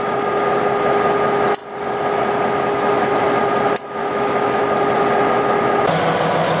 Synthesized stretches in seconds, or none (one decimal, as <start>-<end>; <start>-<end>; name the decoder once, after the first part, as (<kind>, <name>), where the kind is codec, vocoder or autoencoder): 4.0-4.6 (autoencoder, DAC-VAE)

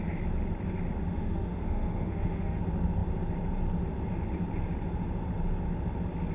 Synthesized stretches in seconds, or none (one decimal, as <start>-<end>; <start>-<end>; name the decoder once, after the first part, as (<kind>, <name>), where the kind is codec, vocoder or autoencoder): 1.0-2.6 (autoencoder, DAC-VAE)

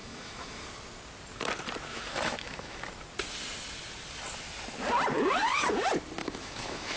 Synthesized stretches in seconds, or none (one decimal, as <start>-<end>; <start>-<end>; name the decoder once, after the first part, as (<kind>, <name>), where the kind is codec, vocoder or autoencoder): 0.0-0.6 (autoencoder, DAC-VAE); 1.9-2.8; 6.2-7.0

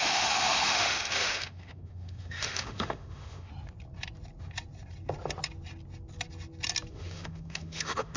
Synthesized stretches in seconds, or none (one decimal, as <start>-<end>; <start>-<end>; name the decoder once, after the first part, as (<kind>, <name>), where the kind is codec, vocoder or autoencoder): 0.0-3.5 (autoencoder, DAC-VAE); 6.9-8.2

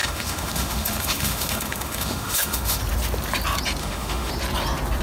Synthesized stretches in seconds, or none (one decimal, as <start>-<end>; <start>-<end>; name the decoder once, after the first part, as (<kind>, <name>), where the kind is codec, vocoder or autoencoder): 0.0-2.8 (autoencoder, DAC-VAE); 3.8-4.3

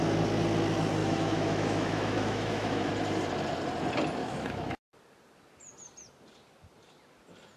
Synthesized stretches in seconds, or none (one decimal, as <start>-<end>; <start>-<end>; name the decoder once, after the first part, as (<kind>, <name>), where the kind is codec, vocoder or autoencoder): 1.0-2.9 (autoencoder, DAC-VAE); 4.2-4.9

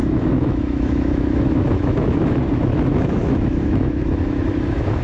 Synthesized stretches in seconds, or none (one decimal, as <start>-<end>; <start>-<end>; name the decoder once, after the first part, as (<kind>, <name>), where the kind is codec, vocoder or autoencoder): 0.0-5.0 (autoencoder, DAC-VAE)

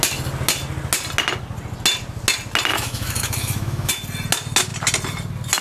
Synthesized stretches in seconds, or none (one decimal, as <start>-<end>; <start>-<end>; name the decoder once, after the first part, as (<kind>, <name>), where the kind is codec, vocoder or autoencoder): 2.7-3.9 (autoencoder, DAC-VAE)